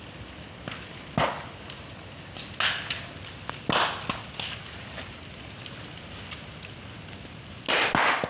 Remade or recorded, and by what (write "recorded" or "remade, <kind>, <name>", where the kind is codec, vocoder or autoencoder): recorded